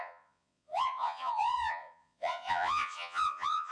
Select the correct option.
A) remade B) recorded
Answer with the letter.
A